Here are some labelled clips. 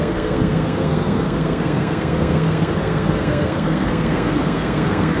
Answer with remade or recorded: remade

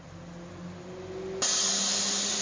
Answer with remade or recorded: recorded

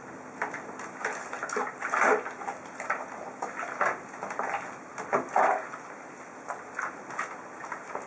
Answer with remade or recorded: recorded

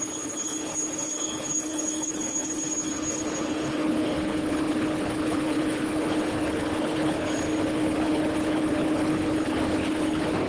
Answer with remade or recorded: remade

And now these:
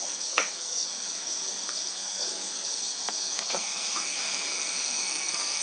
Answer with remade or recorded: remade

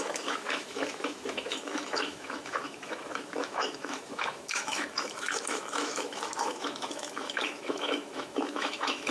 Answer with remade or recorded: remade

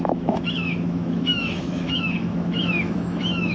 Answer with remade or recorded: remade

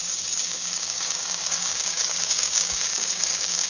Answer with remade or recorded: remade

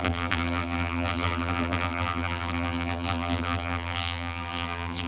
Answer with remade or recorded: remade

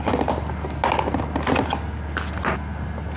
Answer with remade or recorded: recorded